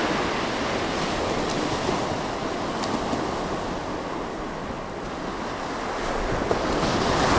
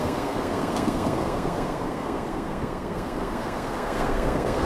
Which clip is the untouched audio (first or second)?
first